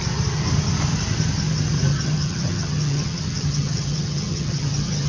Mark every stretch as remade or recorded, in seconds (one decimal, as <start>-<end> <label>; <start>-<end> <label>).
0.0-1.9 recorded; 1.9-5.1 remade